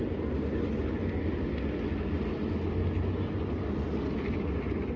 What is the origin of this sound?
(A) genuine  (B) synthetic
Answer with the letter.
A